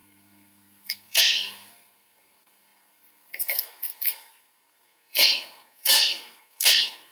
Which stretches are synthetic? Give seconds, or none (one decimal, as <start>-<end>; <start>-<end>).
0.0-7.1